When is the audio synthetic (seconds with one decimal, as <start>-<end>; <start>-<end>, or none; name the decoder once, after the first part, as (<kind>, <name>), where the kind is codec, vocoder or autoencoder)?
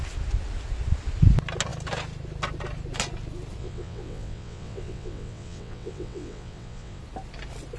3.6-7.0 (vocoder, WaveNeXt)